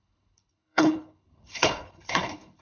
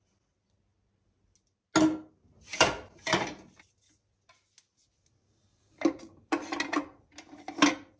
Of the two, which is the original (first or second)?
second